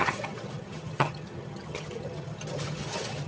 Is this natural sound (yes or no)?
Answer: no